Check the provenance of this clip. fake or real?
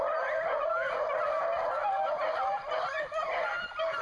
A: real